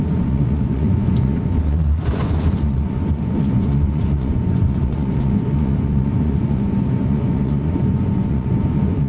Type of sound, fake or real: fake